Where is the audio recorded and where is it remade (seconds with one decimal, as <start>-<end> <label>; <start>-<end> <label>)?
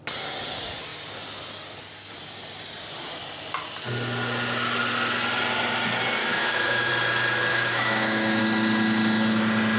0.0-6.2 recorded; 6.2-6.9 remade; 6.9-7.5 recorded; 7.5-8.4 remade; 8.4-9.8 recorded